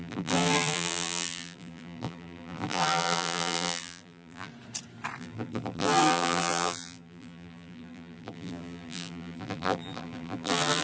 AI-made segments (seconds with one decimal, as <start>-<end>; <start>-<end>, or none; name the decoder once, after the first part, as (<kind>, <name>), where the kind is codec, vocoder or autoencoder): 0.0-4.5 (vocoder, BigVGAN v2); 5.2-10.8